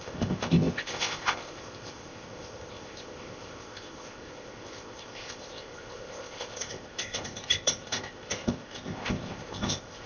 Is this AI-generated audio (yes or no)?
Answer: yes